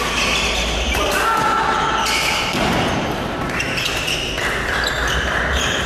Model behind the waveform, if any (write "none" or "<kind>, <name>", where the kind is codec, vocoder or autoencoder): none